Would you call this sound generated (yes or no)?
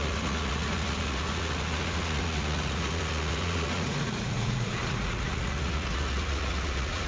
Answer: yes